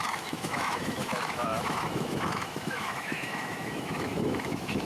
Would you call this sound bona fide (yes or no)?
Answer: no